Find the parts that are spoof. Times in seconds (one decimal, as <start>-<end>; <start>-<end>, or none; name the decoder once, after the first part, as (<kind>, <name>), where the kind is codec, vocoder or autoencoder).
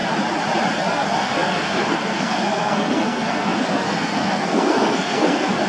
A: 0.9-5.7 (codec, SNAC)